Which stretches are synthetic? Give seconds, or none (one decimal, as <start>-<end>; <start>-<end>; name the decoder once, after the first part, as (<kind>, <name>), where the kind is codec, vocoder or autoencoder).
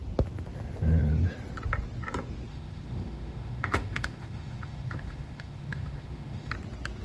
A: 2.5-6.5 (autoencoder, DAC-VAE)